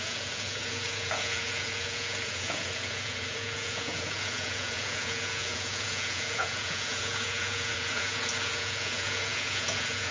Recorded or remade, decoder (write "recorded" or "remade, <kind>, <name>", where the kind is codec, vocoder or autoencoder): remade, vocoder, Vocos